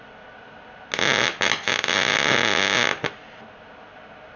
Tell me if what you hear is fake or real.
real